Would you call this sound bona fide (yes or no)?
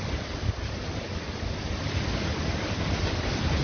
yes